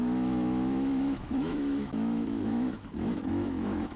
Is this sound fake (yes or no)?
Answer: yes